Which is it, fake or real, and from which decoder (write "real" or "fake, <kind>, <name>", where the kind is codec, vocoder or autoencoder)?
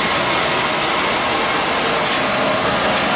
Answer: real